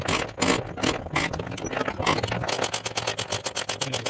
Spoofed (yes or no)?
no